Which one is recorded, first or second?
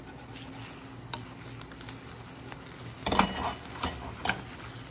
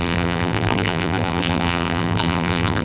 first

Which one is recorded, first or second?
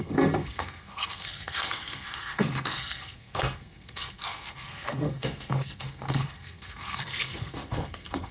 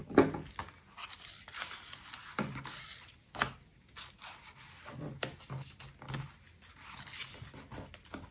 second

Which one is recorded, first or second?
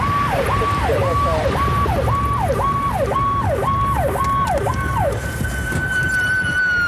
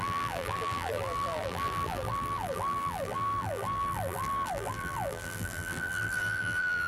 first